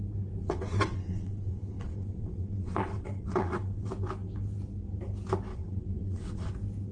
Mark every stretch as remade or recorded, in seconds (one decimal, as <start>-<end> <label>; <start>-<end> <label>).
0.0-0.4 recorded; 0.4-3.9 remade; 3.9-5.5 recorded; 5.5-6.5 remade; 6.5-6.9 recorded